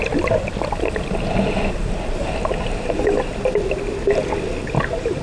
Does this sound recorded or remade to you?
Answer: recorded